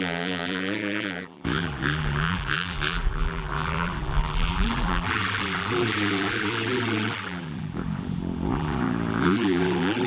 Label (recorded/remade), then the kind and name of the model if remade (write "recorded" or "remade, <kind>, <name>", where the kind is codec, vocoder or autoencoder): remade, vocoder, BigVGAN v2